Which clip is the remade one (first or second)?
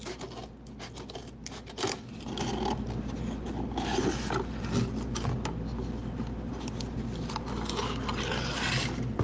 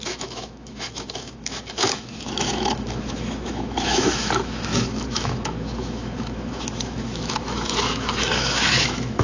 second